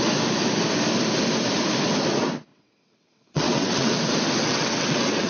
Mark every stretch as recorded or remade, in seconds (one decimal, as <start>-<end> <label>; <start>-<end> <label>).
0.0-2.5 recorded; 2.5-4.0 remade; 4.0-4.4 recorded; 4.4-5.3 remade